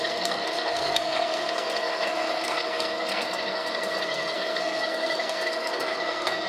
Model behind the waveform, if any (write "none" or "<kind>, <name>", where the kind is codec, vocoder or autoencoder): codec, SNAC